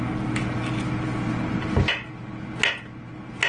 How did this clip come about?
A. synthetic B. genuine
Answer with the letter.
B